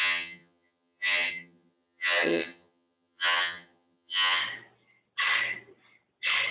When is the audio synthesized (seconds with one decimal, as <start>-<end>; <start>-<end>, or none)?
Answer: 0.0-4.4